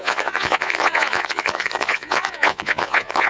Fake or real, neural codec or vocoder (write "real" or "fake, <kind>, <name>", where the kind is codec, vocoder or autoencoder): fake, vocoder, Vocos